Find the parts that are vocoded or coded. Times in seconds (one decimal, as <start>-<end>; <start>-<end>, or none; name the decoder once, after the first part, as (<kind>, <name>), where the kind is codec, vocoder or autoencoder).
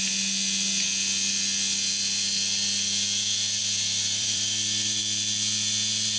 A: 3.6-5.0 (vocoder, BigVGAN v2)